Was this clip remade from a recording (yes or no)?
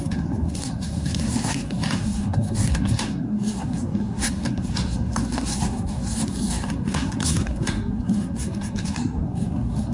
yes